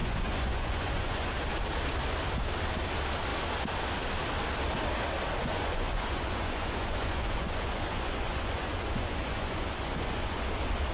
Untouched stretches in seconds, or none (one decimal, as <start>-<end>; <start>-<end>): 1.3-5.4; 10.5-10.9